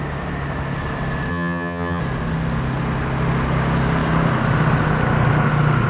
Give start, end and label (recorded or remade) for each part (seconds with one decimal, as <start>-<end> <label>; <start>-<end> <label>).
0.0-1.3 recorded; 1.3-2.0 remade; 2.0-5.9 recorded